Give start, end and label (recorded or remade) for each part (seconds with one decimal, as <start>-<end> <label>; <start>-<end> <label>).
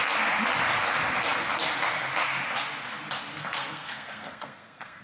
0.0-3.4 recorded; 3.4-5.0 remade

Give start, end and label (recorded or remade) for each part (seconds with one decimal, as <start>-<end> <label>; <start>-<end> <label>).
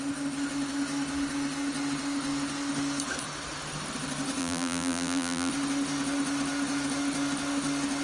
0.0-4.4 recorded; 4.4-5.5 remade; 5.5-8.0 recorded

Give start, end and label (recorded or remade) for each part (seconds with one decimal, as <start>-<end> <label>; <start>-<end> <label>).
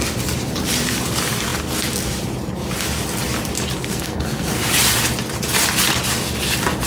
0.0-3.8 recorded; 3.8-4.6 remade; 4.6-6.9 recorded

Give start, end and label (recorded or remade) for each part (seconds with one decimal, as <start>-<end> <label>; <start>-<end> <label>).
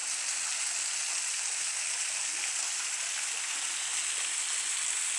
0.0-5.2 recorded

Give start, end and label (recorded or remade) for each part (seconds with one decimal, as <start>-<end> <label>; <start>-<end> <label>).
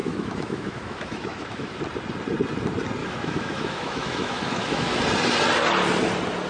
0.0-1.8 remade; 1.8-3.0 recorded; 3.0-5.0 remade; 5.0-6.5 recorded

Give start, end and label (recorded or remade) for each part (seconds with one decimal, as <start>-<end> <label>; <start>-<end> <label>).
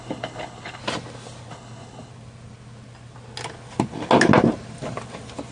0.0-0.8 remade; 0.8-1.5 recorded; 1.5-2.1 remade; 2.1-5.5 recorded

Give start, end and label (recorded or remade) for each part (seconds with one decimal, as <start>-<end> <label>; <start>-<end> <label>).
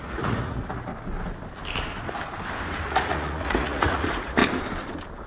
0.0-0.9 remade; 0.9-2.7 recorded; 2.7-4.4 remade; 4.4-5.3 recorded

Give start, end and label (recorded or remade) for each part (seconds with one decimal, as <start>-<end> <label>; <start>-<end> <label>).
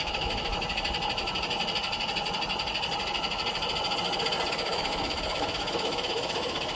0.0-0.5 remade; 0.5-4.5 recorded; 4.5-6.7 remade